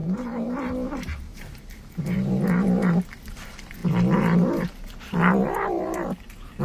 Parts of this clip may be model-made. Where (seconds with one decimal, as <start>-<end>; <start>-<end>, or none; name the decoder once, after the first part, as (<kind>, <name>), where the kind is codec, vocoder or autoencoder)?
0.0-0.7 (vocoder, BigVGAN v2); 1.3-2.4

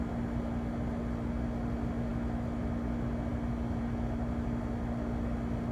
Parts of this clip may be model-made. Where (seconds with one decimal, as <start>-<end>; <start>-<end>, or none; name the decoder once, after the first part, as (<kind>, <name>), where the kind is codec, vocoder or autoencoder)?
none

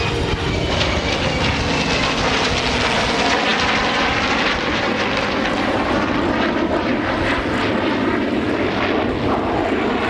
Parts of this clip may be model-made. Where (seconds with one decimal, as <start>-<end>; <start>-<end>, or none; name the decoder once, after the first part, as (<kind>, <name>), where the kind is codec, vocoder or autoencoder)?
none

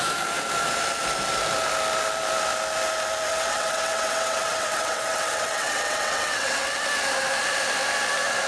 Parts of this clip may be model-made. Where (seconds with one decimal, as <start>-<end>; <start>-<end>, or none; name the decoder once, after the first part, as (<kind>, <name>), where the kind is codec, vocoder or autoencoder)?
3.3-6.7 (vocoder, WaveNeXt)